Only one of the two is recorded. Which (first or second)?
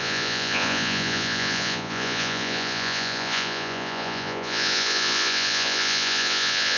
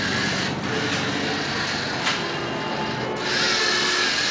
second